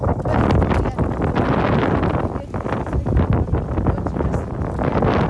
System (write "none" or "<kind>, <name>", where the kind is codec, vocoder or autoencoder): none